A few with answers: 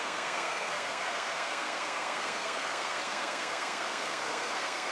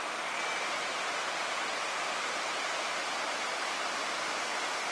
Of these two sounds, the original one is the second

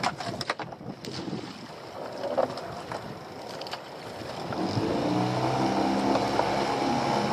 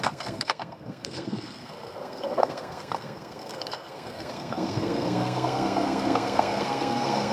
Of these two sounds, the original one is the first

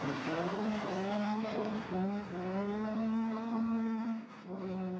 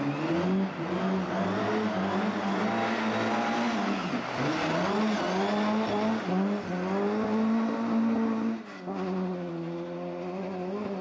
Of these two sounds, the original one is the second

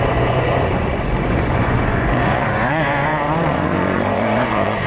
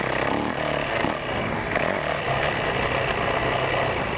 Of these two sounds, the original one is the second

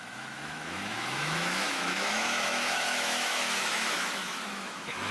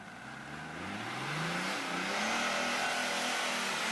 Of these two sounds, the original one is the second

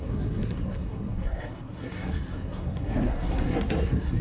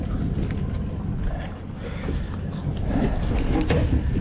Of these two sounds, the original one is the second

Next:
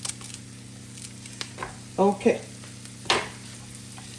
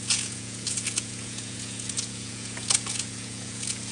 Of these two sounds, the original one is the first